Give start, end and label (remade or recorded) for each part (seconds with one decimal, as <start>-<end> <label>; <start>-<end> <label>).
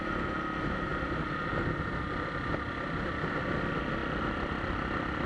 0.0-5.3 recorded